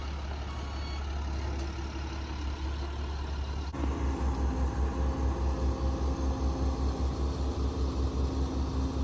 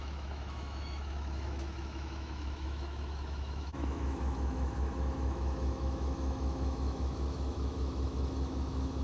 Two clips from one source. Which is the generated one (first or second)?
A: second